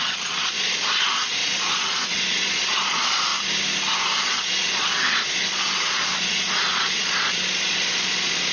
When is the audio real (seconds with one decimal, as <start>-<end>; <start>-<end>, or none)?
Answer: 3.3-4.3